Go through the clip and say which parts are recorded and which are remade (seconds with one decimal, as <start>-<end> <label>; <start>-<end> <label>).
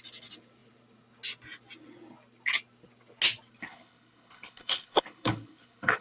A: 0.0-3.6 recorded; 3.6-6.0 remade